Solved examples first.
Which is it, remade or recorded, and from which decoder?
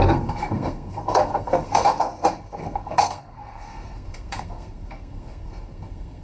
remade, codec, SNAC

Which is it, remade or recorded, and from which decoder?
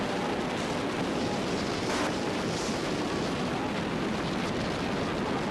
recorded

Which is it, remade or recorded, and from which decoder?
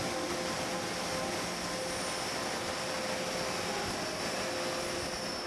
recorded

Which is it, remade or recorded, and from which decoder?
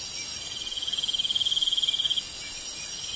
recorded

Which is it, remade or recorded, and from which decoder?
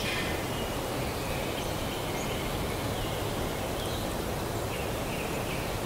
recorded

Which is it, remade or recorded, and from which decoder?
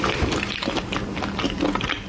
recorded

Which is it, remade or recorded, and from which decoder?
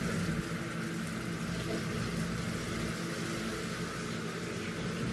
recorded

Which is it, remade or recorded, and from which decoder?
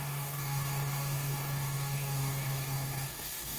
remade, codec, DAC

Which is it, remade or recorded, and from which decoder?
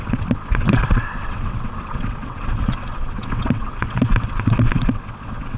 remade, vocoder, WaveNeXt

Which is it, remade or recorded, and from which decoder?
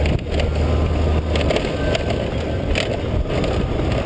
recorded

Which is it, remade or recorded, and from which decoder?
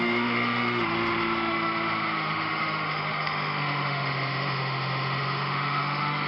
remade, autoencoder, DAC-VAE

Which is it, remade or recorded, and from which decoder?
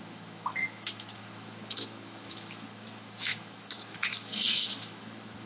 remade, autoencoder, DAC-VAE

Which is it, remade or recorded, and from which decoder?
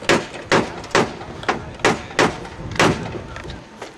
recorded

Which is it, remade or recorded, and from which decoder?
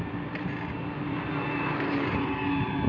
recorded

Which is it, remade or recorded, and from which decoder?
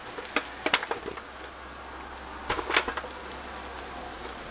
recorded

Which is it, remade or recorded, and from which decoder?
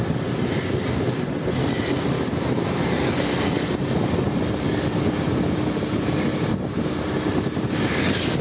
recorded